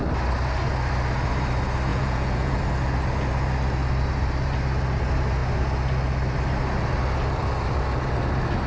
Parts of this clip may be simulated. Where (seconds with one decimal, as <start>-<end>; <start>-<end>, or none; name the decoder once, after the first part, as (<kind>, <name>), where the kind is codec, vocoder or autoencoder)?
1.9-2.6 (vocoder, Vocos)